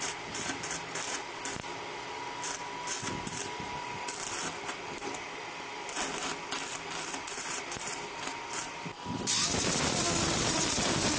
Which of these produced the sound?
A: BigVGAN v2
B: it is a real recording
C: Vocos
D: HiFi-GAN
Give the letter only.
B